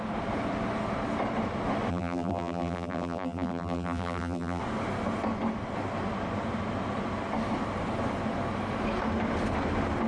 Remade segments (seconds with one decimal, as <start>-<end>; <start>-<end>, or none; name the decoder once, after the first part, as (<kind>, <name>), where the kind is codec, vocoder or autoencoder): 1.9-4.6 (vocoder, BigVGAN v2)